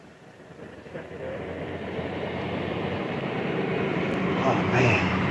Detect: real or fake fake